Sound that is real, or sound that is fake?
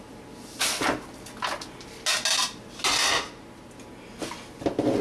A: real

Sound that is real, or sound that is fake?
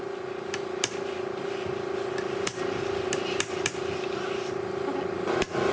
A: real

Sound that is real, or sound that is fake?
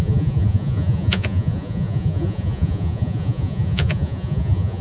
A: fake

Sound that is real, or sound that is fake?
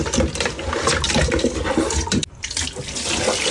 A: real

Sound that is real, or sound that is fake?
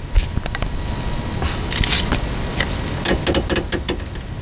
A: real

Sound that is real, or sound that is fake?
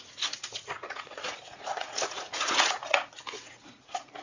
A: fake